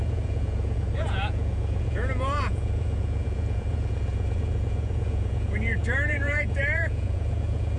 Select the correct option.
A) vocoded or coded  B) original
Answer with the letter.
A